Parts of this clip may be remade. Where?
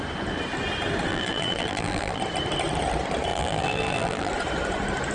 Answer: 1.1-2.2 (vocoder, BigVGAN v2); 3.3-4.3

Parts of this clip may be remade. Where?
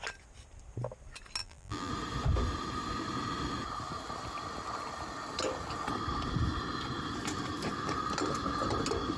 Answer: 1.4-1.9 (vocoder, BigVGAN v2)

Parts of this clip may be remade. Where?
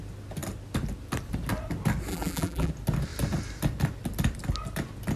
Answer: 2.1-2.7 (vocoder, BigVGAN v2)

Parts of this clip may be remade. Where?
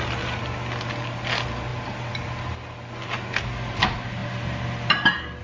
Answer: none